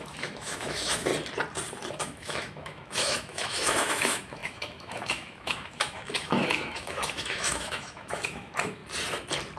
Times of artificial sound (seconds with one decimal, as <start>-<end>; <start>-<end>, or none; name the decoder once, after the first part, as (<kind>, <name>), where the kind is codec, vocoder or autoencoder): 0.0-1.1 (autoencoder, DAC-VAE); 1.9-8.8